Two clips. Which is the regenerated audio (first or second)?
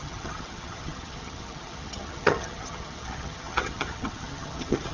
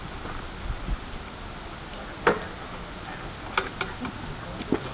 first